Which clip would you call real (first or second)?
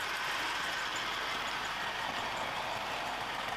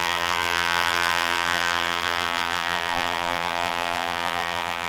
first